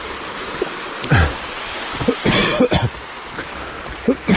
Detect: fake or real real